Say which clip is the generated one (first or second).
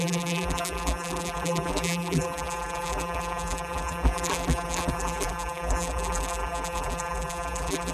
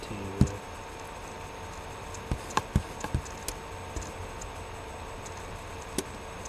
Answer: first